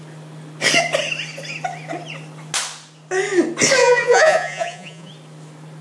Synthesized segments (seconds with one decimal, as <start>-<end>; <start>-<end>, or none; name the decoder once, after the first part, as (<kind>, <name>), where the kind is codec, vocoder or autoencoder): 3.8-5.1 (vocoder, Vocos)